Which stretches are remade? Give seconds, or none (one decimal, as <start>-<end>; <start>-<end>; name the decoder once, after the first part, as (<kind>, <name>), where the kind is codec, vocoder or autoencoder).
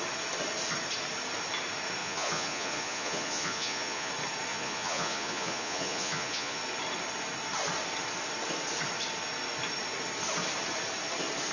2.0-4.1 (vocoder, Vocos); 4.5-6.6